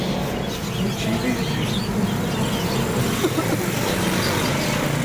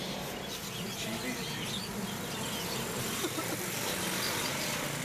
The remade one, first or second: second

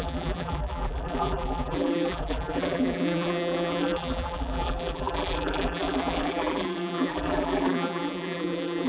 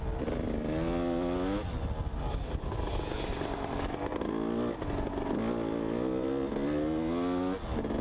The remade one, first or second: first